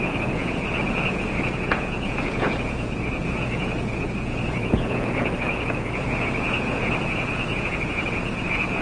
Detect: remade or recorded remade